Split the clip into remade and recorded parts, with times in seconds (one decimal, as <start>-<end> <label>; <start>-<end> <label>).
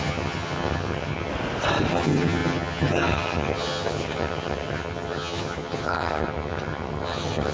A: 0.0-1.3 remade; 1.3-1.9 recorded; 1.9-7.5 remade